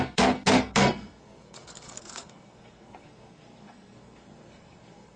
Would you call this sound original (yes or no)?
no